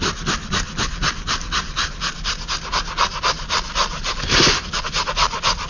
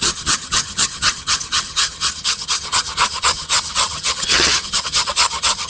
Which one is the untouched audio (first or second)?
first